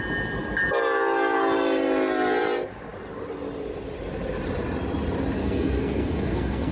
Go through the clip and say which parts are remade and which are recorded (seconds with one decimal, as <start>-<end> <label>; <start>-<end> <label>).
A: 0.0-5.4 recorded; 5.4-6.7 remade